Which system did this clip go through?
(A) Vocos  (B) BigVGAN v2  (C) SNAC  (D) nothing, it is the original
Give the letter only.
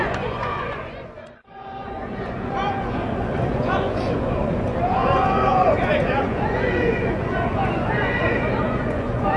A